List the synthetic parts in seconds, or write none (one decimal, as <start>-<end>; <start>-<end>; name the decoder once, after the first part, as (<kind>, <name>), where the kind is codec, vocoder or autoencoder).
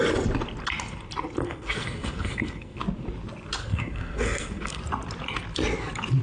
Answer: 1.4-2.8 (codec, SNAC); 3.6-4.8